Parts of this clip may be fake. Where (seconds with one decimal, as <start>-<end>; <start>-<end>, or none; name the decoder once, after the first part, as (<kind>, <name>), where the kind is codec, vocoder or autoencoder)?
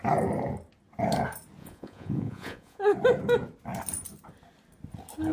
1.6-2.8 (vocoder, Vocos)